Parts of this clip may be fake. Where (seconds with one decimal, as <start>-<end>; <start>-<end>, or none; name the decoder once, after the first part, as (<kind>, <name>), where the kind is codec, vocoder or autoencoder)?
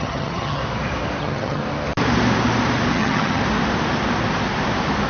0.0-0.6 (vocoder, HiFi-GAN); 1.2-1.6; 2.9-3.4